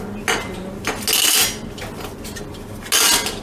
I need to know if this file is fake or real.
real